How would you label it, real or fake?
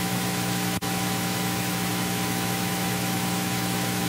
fake